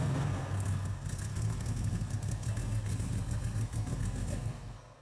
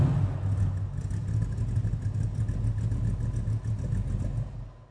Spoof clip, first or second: first